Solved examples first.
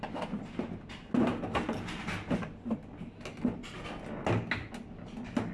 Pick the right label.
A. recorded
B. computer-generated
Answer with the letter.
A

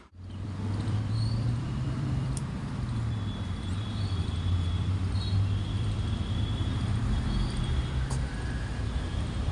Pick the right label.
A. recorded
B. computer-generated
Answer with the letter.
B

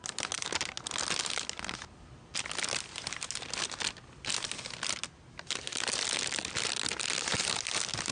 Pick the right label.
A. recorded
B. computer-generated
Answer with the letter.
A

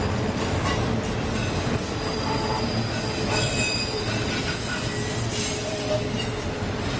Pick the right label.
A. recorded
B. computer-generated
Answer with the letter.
A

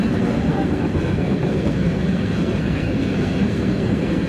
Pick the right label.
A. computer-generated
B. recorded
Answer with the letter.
A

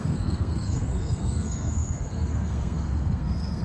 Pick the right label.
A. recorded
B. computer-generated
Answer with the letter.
B